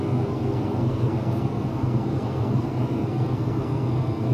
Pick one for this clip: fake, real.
fake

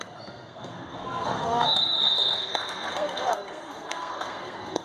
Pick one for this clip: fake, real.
fake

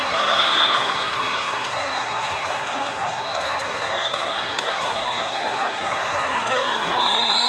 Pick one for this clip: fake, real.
fake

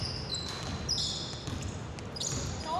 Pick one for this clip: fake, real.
real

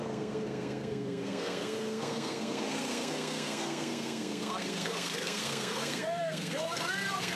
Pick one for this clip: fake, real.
fake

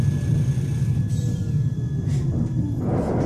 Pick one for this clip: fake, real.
real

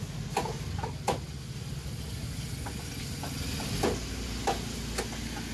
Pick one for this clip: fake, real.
real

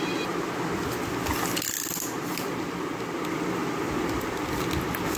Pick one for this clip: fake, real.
real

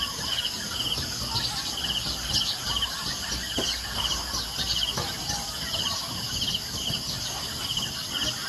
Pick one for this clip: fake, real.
real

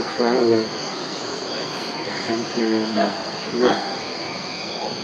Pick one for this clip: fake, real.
fake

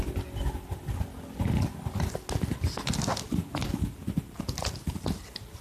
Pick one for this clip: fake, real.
real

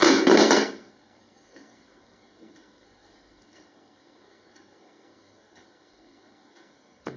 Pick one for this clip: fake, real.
fake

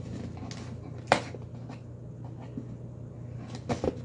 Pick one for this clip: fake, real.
real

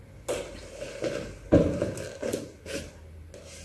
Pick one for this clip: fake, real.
real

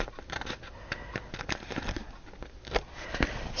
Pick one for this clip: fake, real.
real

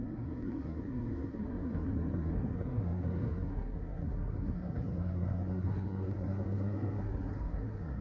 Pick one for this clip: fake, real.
fake